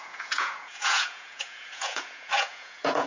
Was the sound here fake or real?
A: fake